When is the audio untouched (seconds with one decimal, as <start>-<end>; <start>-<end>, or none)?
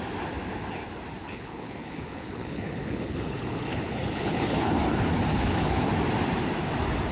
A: 0.0-1.2; 4.7-5.3; 5.9-7.1